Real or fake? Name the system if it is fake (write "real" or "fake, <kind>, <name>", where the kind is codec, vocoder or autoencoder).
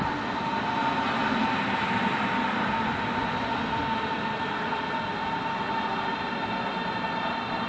real